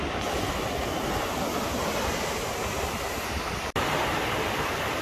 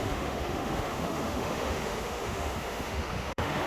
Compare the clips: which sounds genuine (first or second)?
first